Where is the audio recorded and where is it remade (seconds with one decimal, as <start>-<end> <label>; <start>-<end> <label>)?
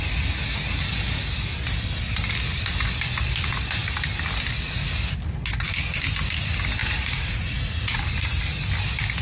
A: 0.0-6.8 recorded; 6.8-8.4 remade; 8.4-9.2 recorded